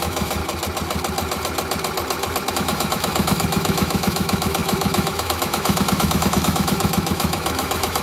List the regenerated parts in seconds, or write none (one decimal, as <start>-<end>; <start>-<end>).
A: 0.0-0.4; 2.5-8.0